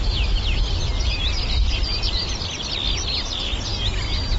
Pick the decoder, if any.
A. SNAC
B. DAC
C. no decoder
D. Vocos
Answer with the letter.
C